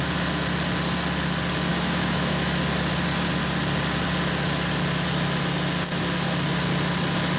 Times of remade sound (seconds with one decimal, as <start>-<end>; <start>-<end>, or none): 1.7-2.6

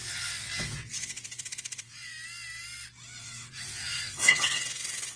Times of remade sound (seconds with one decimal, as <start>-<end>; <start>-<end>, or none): 0.0-2.1; 3.2-5.2

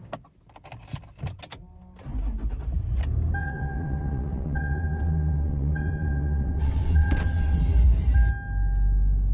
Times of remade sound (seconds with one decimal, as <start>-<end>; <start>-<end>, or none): 3.4-7.6

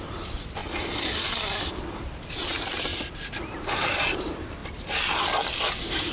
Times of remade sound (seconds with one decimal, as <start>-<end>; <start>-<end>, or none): 0.0-0.6; 1.9-2.9; 3.4-4.6; 5.6-6.1

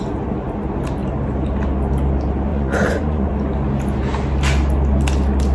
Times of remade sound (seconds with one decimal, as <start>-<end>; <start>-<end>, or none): 2.5-3.3

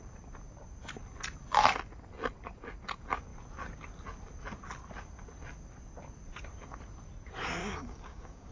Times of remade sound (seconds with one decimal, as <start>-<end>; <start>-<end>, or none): 7.6-8.5

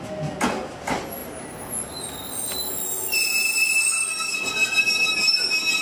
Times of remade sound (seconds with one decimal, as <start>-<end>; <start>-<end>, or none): 1.2-1.7; 4.6-5.8

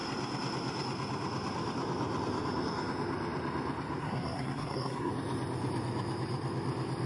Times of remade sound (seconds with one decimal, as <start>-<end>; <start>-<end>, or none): 4.0-5.1